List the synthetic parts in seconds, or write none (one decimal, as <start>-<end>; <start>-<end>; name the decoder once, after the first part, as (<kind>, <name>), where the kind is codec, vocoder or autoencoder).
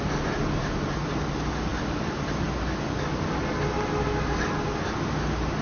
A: none